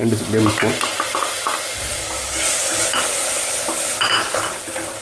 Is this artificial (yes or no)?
no